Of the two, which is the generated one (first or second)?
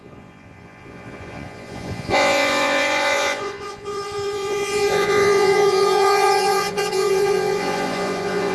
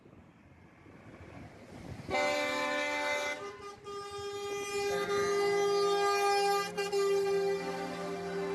first